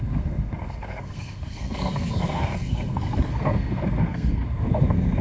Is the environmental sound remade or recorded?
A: remade